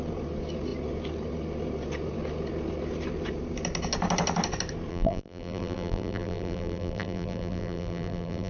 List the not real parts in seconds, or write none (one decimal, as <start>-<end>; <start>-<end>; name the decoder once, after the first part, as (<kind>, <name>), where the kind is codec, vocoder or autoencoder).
4.9-8.5 (vocoder, BigVGAN v2)